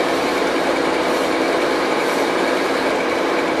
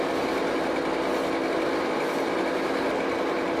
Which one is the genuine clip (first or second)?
second